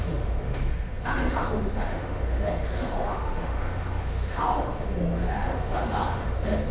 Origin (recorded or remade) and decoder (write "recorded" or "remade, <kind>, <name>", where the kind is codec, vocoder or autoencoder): remade, autoencoder, DAC-VAE